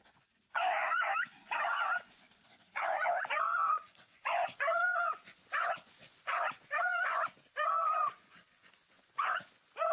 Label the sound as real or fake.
fake